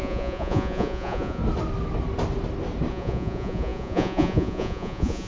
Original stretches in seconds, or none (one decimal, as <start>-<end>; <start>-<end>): 1.4-2.9